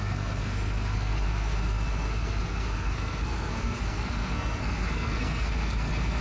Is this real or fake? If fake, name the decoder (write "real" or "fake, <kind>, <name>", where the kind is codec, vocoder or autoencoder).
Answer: fake, codec, SNAC